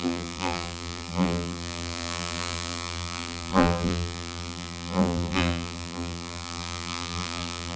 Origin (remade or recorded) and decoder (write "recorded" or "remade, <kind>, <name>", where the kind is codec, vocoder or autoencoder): remade, vocoder, BigVGAN v2